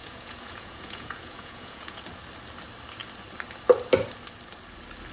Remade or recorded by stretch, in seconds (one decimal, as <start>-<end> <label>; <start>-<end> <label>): 0.0-2.0 remade; 2.0-5.1 recorded